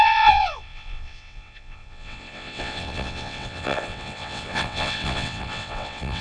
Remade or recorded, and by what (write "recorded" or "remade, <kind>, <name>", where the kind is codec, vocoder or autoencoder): remade, vocoder, WaveNeXt